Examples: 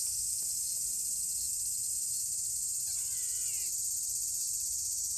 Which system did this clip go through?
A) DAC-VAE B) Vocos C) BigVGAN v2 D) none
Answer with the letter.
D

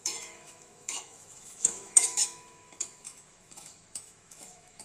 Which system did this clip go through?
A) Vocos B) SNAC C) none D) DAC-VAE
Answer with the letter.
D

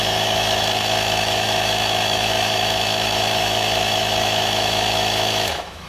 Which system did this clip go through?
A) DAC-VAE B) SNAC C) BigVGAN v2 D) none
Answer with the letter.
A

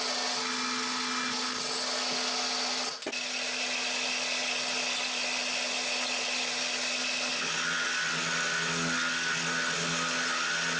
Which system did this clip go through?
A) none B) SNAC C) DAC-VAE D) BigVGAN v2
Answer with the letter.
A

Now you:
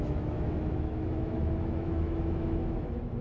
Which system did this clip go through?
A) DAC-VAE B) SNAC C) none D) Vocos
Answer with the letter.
A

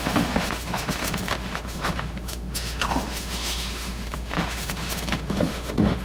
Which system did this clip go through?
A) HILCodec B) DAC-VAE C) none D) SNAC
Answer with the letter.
B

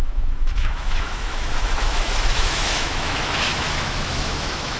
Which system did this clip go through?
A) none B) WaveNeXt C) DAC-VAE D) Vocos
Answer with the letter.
C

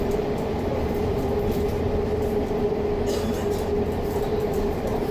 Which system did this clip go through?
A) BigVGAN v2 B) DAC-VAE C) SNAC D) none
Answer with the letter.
D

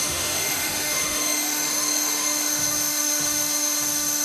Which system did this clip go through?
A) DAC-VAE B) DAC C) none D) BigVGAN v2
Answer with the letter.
A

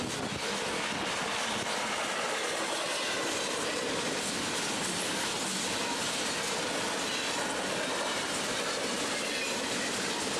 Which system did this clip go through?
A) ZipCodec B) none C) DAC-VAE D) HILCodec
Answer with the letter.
B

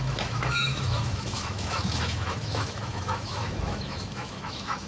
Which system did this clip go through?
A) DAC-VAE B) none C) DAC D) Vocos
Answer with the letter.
A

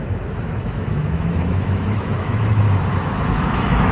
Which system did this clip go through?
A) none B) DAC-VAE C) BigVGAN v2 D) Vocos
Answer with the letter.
B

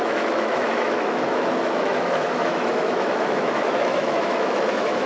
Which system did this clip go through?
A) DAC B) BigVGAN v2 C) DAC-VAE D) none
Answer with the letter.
C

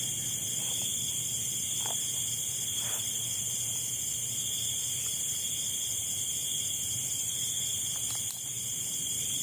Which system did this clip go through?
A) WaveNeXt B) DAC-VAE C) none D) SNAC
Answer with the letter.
C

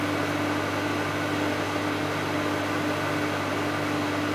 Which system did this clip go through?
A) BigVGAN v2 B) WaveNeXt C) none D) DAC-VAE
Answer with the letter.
C